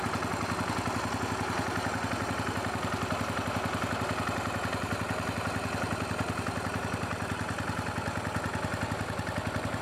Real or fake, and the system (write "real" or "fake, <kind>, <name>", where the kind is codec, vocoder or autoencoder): real